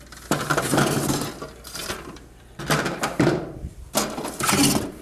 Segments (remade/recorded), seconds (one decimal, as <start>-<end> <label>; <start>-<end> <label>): 0.0-1.8 recorded; 1.8-3.5 remade; 3.5-5.0 recorded